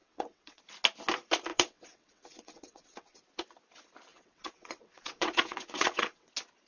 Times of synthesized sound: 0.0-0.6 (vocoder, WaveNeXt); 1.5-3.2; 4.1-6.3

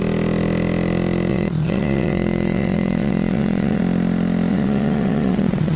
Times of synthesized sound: 1.3-3.8 (vocoder, WaveNeXt); 4.5-5.8

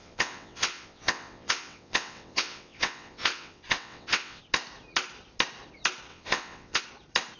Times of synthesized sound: 0.0-4.4 (vocoder, WaveNeXt); 6.1-6.8